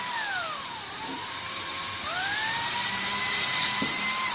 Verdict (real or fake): fake